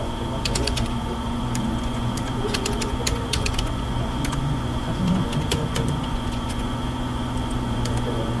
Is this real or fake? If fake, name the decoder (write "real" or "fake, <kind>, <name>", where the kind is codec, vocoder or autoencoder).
fake, vocoder, Vocos